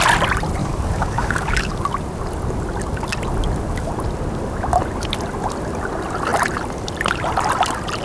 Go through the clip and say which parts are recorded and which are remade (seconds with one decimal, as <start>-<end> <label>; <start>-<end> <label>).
0.0-0.6 recorded; 0.6-1.7 remade; 1.7-8.0 recorded